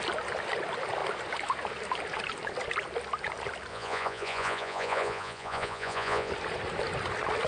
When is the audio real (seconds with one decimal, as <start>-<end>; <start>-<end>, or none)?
0.0-3.7; 6.3-7.5